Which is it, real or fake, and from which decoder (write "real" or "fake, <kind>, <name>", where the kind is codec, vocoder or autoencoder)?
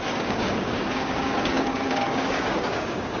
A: fake, codec, DAC